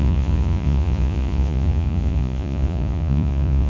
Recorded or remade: remade